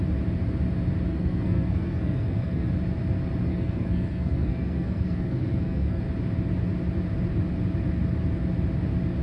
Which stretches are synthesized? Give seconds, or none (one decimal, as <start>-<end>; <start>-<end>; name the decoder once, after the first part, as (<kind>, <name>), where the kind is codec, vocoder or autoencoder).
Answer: 1.1-2.7 (codec, SNAC); 3.5-6.0